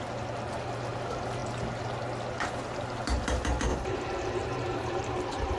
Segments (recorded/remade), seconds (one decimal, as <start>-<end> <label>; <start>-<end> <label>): 0.0-3.7 recorded; 3.7-5.6 remade